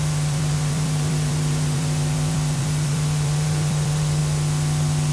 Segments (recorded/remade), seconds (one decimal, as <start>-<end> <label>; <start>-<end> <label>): 0.0-4.2 remade; 4.2-5.1 recorded